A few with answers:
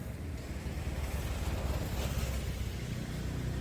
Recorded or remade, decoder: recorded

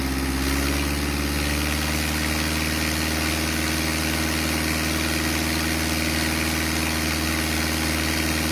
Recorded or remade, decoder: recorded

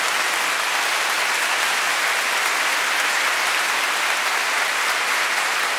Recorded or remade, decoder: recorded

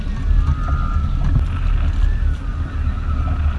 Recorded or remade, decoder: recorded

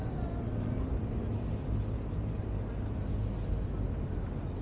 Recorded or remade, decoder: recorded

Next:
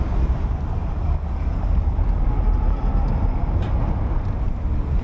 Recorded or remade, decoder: recorded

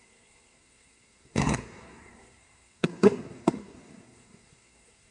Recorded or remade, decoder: remade, codec, SNAC